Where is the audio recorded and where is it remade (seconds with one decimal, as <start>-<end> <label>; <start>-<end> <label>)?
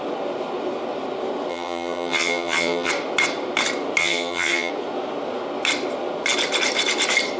0.0-1.5 recorded; 1.5-2.9 remade; 2.9-4.0 recorded; 4.0-4.7 remade; 4.7-7.4 recorded